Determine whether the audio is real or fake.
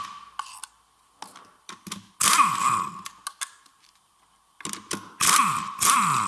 real